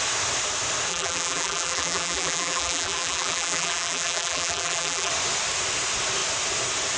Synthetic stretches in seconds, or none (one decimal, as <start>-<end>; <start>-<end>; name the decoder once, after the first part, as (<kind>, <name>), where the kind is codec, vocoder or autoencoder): 0.9-5.1 (vocoder, BigVGAN v2)